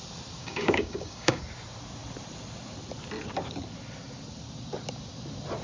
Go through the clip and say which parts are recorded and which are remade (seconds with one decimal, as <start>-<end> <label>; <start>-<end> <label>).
0.0-0.4 recorded; 0.4-1.4 remade; 1.4-5.6 recorded